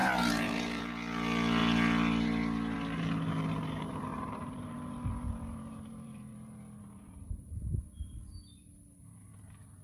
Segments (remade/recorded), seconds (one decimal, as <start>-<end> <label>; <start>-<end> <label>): 0.0-0.9 remade; 0.9-4.1 recorded; 4.1-7.8 remade; 7.8-9.8 recorded